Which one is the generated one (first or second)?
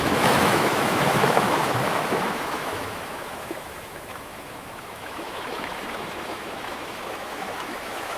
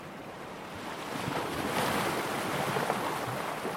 first